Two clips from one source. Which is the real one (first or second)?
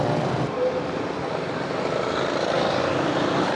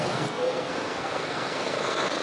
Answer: first